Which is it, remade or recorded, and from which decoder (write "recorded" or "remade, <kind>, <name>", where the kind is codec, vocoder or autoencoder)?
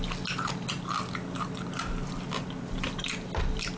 recorded